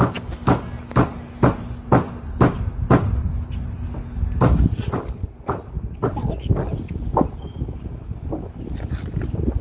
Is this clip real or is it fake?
real